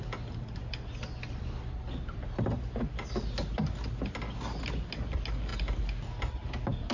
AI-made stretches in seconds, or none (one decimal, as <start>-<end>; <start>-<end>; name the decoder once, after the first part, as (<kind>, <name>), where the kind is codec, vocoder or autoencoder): none